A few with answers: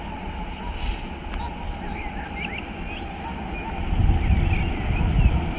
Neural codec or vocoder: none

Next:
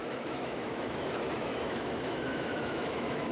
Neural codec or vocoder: autoencoder, DAC-VAE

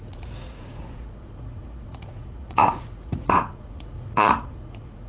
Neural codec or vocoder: vocoder, Vocos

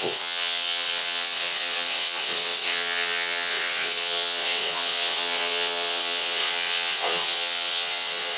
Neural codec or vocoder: vocoder, WaveNeXt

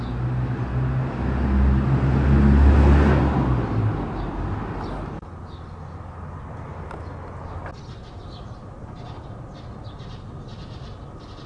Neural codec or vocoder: none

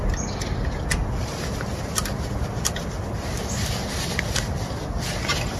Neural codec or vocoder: none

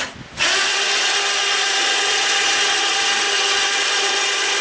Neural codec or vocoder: none